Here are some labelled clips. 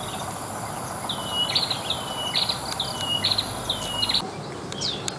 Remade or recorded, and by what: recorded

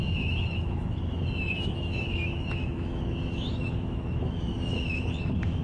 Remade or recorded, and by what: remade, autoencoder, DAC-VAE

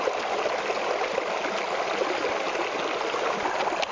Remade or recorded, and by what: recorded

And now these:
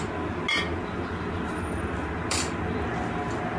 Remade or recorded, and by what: recorded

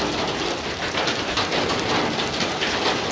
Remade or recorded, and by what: recorded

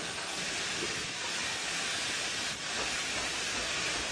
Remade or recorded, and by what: recorded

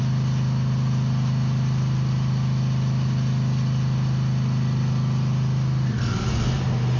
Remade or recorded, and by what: recorded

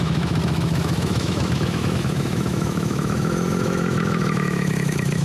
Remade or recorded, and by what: remade, autoencoder, DAC-VAE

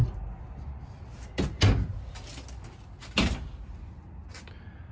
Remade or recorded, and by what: recorded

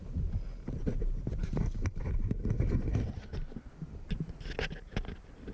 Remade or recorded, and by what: recorded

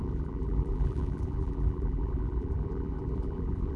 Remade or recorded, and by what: remade, vocoder, BigVGAN v2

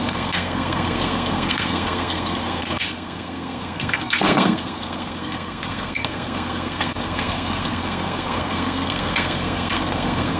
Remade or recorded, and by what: remade, codec, SNAC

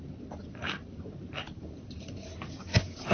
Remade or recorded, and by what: remade, vocoder, BigVGAN v2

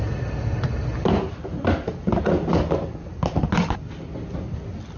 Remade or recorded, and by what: recorded